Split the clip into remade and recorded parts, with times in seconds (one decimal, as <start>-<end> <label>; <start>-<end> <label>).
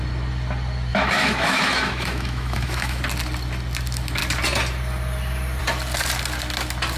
0.0-0.9 recorded; 0.9-3.0 remade; 3.0-7.0 recorded